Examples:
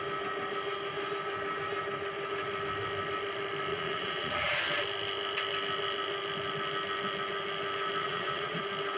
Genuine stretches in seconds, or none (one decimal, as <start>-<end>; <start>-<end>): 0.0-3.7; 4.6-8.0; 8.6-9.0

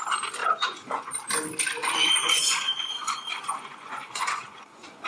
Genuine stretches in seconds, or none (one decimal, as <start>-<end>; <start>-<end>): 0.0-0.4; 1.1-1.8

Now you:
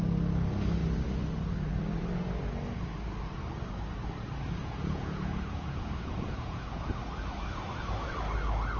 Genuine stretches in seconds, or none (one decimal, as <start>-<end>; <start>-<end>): 0.0-4.6; 6.9-8.8

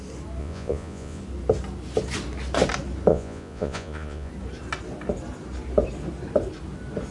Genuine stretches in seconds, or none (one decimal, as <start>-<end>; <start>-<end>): 0.0-0.4; 1.2-3.1; 4.3-7.1

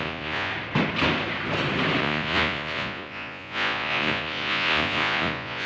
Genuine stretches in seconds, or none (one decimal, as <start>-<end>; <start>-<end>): 0.5-2.0

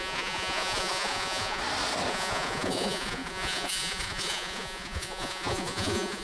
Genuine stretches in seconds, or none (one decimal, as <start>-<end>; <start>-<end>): 1.6-2.1

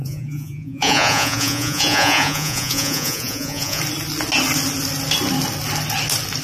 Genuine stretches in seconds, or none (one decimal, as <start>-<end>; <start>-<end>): 3.8-6.4

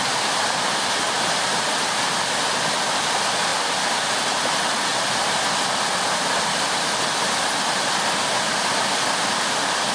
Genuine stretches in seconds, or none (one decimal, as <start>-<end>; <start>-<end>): 0.0-9.9